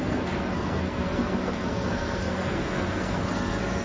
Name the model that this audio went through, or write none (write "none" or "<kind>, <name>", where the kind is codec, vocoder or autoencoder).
codec, SNAC